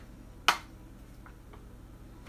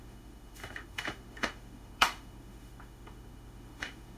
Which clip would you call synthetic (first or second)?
second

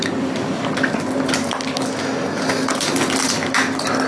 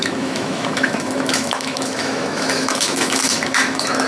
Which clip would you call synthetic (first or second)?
second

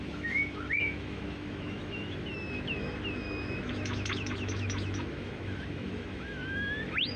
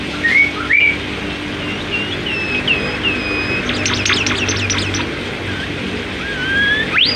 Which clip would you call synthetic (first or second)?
first